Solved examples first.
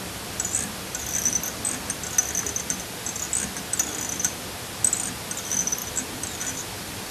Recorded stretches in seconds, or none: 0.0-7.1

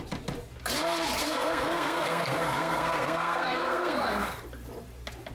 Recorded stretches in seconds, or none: 0.0-1.2; 4.4-5.3

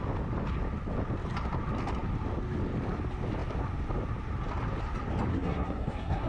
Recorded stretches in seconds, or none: 0.0-5.3